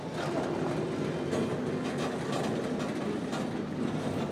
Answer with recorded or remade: recorded